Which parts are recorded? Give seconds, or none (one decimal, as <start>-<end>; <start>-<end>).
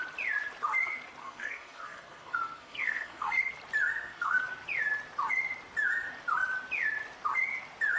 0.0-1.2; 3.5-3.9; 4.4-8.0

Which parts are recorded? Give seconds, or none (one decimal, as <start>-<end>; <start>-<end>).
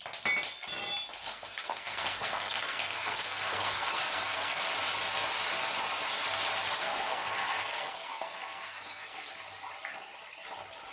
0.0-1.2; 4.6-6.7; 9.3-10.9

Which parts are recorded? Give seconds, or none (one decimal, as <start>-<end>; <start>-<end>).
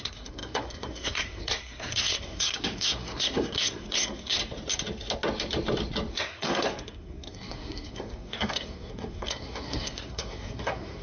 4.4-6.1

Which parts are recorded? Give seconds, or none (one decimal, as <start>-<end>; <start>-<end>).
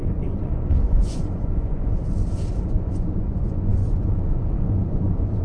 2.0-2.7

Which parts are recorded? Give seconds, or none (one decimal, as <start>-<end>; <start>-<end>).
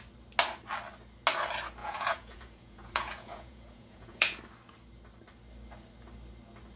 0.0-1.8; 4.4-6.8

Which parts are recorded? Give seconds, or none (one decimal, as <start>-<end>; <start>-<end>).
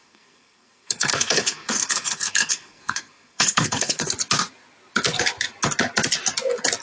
4.1-6.8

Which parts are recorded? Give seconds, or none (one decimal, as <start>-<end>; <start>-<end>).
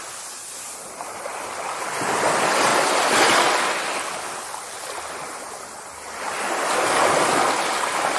0.0-8.2